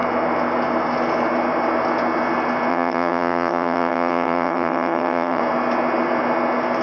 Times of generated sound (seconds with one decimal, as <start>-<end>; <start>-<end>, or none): 2.7-5.4